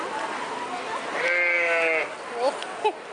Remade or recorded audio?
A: recorded